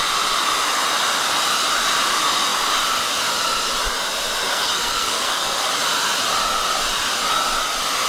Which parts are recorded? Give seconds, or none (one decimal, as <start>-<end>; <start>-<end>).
0.0-4.5; 5.7-8.1